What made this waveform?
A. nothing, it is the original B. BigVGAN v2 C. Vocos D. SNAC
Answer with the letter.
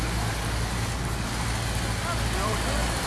A